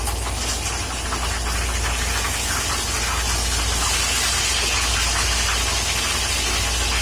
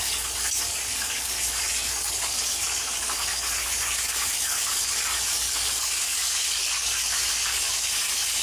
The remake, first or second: second